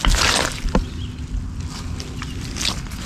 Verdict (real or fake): real